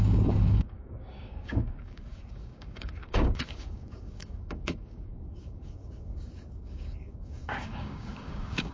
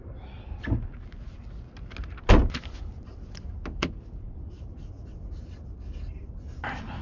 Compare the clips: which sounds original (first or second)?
second